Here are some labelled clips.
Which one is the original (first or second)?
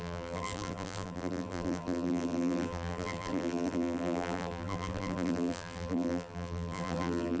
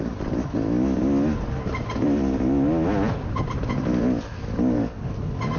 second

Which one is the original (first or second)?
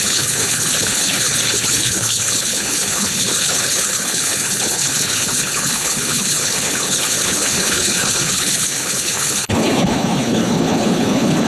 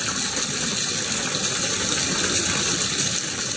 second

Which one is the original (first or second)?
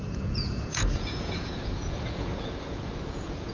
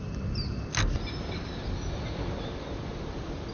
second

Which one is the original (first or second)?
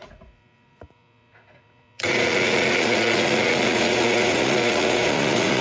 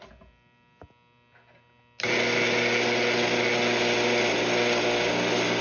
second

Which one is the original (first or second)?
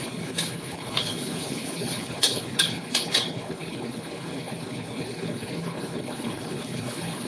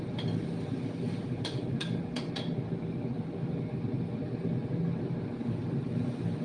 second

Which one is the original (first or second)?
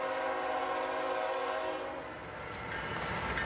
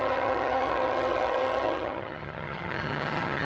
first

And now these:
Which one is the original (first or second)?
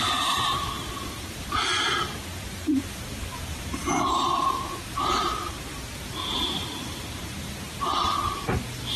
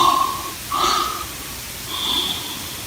second